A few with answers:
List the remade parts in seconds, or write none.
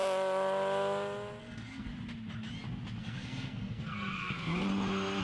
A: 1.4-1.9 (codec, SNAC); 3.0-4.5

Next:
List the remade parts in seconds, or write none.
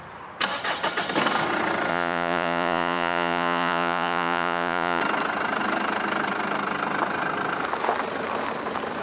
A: 1.9-5.0 (vocoder, Vocos)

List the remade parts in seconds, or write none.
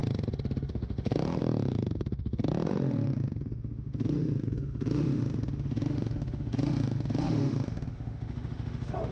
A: 0.7-9.1 (autoencoder, DAC-VAE)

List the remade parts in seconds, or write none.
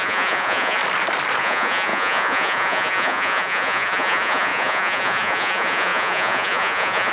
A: 0.0-0.8 (vocoder, Vocos); 1.4-7.1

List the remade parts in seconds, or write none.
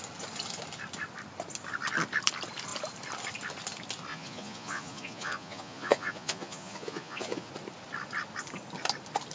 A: 4.1-7.5 (vocoder, Vocos)